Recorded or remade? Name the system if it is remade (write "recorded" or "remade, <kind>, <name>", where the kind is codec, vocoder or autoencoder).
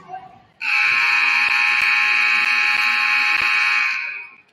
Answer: recorded